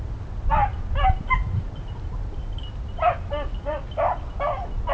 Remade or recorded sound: recorded